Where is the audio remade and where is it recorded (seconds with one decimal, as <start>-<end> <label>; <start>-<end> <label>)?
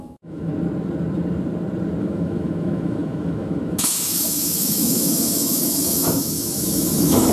0.0-0.5 remade; 0.5-2.0 recorded; 2.0-7.3 remade